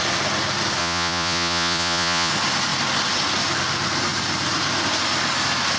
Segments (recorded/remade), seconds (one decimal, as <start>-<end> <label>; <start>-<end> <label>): 0.0-0.8 recorded; 0.8-2.3 remade; 2.3-5.8 recorded